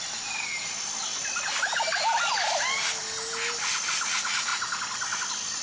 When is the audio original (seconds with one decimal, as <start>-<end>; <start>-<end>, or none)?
0.0-5.6